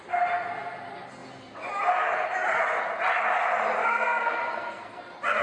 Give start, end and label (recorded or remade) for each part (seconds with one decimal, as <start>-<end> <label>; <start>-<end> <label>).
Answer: 0.0-3.8 recorded; 3.8-5.0 remade; 5.0-5.4 recorded